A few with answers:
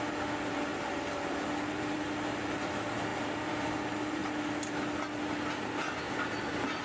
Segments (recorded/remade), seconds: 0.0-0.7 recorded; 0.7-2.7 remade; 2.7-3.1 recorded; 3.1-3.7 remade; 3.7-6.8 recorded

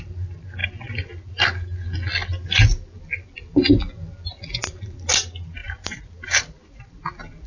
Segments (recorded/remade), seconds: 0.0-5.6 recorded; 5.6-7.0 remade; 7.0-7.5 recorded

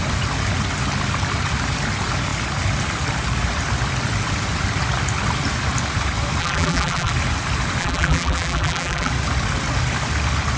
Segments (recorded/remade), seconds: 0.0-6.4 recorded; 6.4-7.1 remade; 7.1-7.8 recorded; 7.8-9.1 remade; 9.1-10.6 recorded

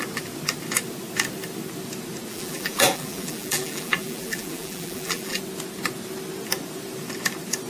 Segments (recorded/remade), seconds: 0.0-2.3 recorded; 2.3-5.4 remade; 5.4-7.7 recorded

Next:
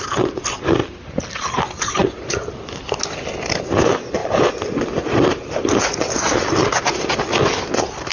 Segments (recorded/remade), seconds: 0.0-8.1 recorded

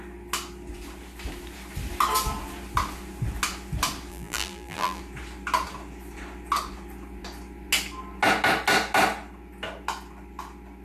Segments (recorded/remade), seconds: 0.0-4.1 recorded; 4.1-5.0 remade; 5.0-10.8 recorded

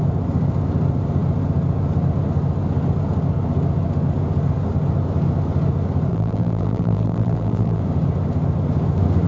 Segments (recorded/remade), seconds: 0.0-6.1 recorded; 6.1-7.8 remade; 7.8-9.3 recorded